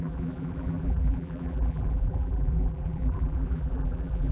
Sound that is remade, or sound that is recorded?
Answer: remade